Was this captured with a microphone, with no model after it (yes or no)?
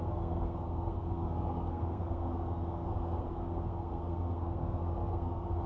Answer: no